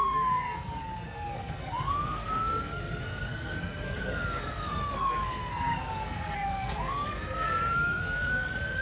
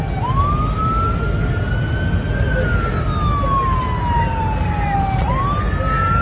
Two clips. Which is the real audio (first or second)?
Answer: second